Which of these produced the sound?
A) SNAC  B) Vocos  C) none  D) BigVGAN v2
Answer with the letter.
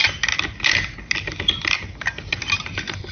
C